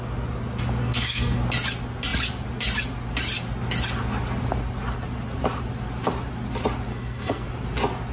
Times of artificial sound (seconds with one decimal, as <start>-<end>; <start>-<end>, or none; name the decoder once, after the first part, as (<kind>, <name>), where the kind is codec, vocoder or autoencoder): 0.8-1.4 (codec, SNAC); 6.9-7.5